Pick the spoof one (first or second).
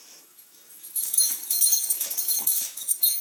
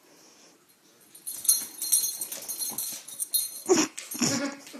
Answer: first